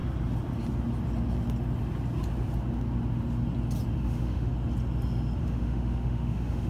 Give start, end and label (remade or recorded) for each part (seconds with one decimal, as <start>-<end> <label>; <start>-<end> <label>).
0.0-4.0 recorded; 4.0-4.5 remade; 4.5-5.4 recorded; 5.4-6.7 remade